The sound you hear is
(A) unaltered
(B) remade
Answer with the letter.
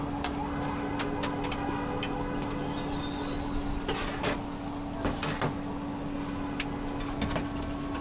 A